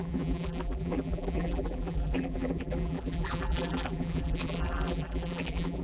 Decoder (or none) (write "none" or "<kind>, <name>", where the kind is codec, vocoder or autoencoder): vocoder, BigVGAN v2